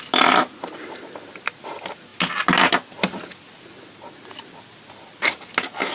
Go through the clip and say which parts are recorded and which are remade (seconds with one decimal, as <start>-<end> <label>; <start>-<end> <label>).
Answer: 0.0-5.9 recorded